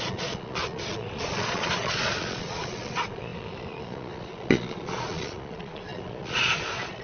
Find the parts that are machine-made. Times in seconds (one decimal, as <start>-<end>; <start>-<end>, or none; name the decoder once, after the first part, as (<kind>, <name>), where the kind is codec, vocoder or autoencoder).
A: 0.0-7.0 (vocoder, Vocos)